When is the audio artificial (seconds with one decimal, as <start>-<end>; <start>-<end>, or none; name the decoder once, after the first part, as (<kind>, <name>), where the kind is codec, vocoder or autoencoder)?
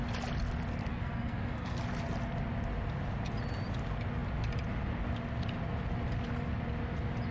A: 0.9-1.8 (codec, SNAC)